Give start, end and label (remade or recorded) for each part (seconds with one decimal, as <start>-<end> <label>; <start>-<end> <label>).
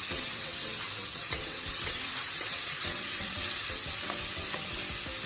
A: 0.0-4.8 remade; 4.8-5.3 recorded